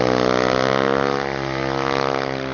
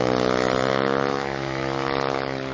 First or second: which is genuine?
first